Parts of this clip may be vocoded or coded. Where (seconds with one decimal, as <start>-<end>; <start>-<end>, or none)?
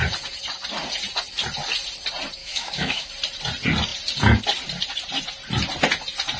2.4-3.1